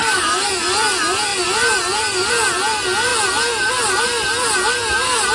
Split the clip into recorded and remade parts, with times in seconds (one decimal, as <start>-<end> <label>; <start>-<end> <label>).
0.0-0.5 remade; 0.5-5.3 recorded